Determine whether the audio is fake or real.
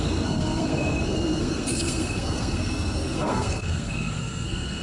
fake